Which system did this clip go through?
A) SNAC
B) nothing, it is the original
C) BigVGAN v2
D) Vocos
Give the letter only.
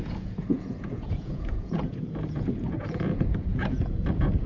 D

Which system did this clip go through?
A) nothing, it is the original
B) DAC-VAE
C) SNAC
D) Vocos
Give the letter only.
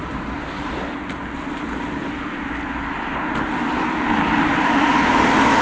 A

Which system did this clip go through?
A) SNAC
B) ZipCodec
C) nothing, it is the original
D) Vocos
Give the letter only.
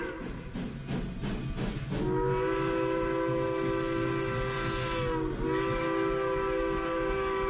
C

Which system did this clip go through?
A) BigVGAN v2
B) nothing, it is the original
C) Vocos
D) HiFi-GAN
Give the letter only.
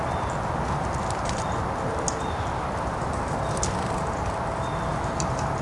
B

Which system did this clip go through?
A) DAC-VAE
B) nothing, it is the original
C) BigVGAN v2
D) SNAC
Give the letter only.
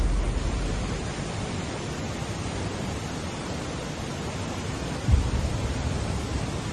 B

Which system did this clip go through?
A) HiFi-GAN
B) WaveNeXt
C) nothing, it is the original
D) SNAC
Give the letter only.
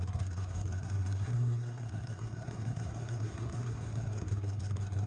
D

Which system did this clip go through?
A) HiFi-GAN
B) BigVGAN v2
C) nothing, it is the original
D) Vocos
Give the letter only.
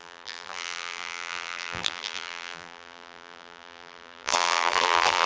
B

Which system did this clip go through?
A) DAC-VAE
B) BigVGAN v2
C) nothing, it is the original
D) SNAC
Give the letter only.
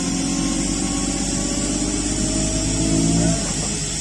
C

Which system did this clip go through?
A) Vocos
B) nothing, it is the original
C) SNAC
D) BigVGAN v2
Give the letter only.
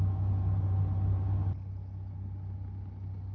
B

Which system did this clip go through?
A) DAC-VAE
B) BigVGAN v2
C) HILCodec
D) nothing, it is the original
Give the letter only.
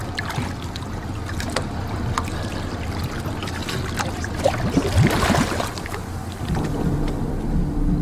D